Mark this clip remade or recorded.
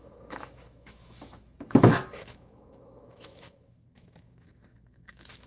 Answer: remade